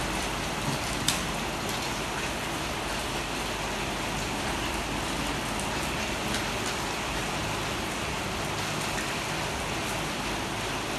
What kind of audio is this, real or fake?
real